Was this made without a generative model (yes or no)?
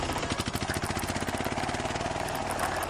yes